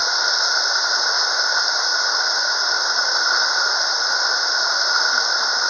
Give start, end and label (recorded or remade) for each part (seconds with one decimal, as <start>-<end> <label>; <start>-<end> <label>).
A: 0.0-5.7 recorded